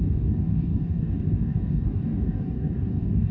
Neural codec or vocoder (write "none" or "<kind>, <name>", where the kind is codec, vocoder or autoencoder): codec, DAC